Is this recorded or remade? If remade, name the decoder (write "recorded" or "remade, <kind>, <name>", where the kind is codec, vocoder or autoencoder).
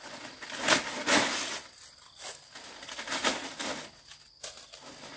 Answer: recorded